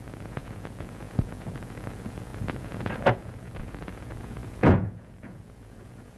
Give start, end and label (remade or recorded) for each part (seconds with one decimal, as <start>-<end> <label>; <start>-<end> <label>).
0.0-6.2 remade